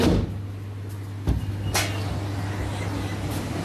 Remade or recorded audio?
recorded